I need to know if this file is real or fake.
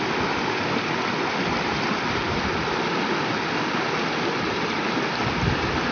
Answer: real